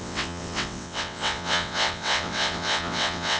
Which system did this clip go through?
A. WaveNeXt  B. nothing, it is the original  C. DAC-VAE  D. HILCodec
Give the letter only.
A